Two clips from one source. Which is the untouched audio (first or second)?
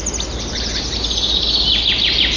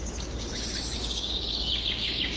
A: first